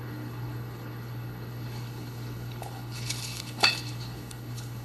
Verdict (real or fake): fake